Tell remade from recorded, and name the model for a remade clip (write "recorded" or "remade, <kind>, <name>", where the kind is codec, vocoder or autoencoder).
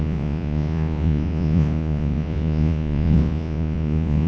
remade, vocoder, Vocos